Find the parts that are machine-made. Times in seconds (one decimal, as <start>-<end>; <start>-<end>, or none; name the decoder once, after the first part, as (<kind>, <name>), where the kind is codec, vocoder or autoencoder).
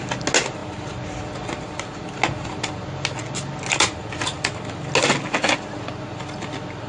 none